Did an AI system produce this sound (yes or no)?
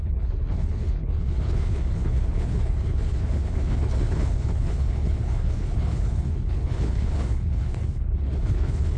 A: yes